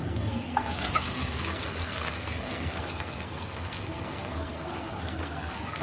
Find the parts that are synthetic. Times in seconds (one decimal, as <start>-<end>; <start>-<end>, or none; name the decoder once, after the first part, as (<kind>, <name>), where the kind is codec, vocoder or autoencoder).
0.0-5.8 (codec, SNAC)